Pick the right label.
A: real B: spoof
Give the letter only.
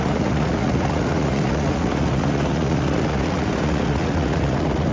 B